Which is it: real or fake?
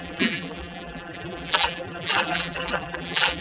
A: fake